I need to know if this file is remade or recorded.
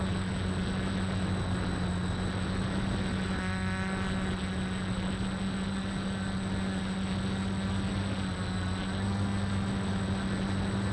recorded